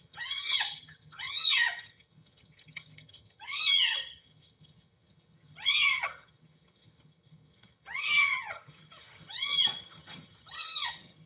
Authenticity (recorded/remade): remade